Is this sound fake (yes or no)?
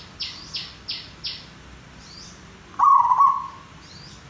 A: no